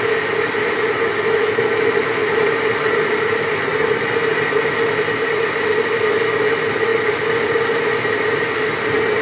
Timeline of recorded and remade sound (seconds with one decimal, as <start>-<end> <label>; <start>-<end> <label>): 0.0-2.2 recorded; 2.2-3.1 remade; 3.1-3.7 recorded; 3.7-4.7 remade; 4.7-9.2 recorded